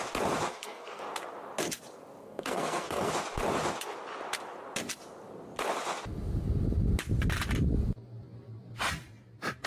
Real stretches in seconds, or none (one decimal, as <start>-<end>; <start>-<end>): 0.0-0.5; 1.0-2.2; 3.1-9.7